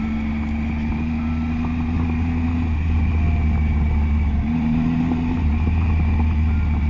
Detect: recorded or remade recorded